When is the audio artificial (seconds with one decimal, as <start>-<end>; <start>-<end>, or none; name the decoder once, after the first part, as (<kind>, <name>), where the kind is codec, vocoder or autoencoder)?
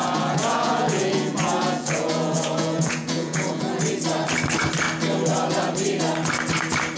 0.0-3.8 (vocoder, Vocos)